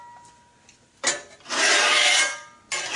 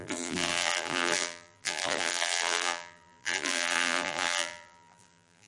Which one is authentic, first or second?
first